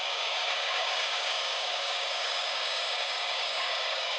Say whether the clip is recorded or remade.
remade